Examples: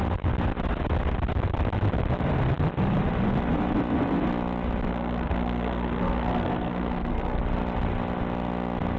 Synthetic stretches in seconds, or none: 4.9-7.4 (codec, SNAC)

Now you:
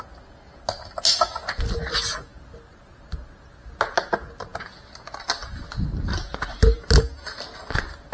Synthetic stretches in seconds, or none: none

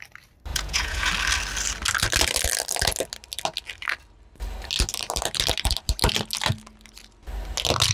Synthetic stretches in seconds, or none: 0.5-1.1 (vocoder, Vocos)

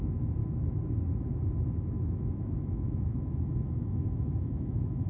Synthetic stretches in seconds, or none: 0.0-0.4 (autoencoder, DAC-VAE); 1.7-5.1

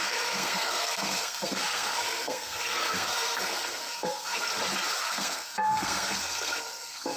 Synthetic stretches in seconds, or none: 0.0-4.5 (codec, SNAC); 5.0-7.2

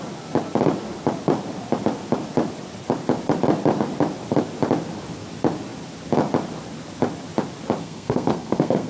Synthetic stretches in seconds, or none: 7.8-8.9 (codec, SNAC)

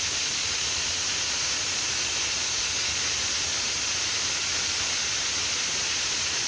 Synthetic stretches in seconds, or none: none